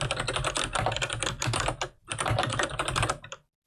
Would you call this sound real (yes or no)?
yes